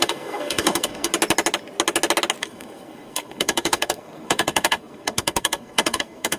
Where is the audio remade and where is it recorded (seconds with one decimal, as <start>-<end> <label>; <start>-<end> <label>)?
0.0-1.1 remade; 1.1-2.4 recorded; 2.4-6.4 remade